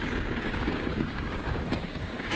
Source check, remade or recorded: remade